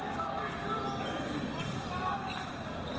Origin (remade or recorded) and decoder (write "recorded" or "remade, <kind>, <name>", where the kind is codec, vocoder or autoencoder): recorded